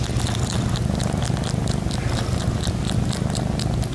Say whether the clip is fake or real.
real